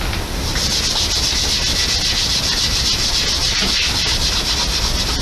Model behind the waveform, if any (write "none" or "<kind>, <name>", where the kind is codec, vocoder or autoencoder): none